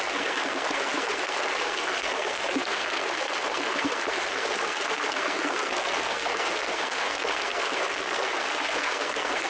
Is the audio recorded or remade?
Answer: remade